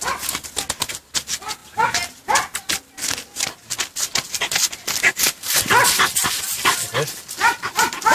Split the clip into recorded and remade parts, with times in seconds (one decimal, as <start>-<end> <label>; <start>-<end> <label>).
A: 0.0-8.1 recorded